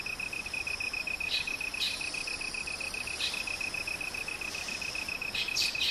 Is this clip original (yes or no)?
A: no